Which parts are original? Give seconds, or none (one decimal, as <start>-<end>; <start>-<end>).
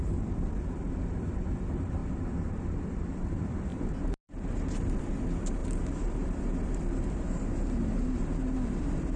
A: 3.7-5.0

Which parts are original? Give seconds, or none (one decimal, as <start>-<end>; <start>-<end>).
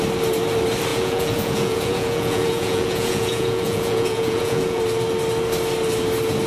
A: 0.0-0.9; 4.8-6.5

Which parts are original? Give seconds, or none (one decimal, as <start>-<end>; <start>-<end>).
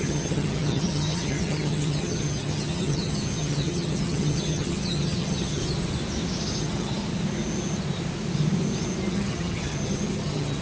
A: 5.6-6.6; 7.0-9.1